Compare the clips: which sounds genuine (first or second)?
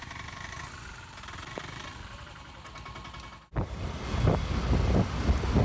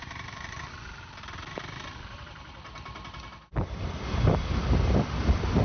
first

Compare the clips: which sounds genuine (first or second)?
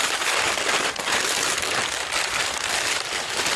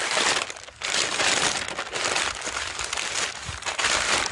second